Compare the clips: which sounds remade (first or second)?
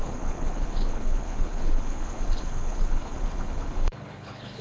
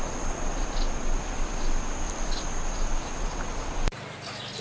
first